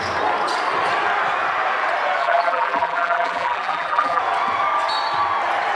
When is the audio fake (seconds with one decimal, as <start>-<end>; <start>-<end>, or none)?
2.2-4.2